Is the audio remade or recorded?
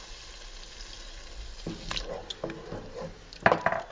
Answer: recorded